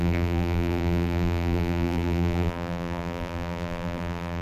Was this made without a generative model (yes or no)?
no